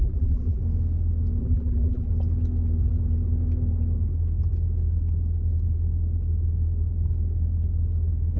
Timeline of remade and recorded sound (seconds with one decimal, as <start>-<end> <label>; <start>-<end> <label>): 0.0-0.6 remade; 0.6-1.4 recorded; 1.4-2.1 remade; 2.1-8.4 recorded